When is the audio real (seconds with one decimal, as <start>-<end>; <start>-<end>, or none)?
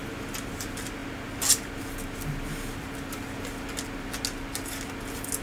0.0-5.4